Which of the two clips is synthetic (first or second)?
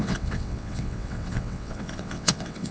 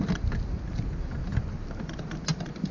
first